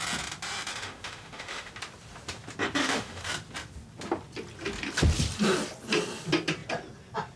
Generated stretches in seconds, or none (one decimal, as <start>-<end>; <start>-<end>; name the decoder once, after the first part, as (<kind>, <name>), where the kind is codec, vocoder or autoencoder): 0.7-1.7 (autoencoder, DAC-VAE); 2.8-3.3